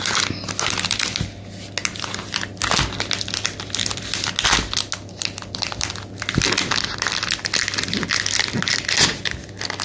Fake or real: real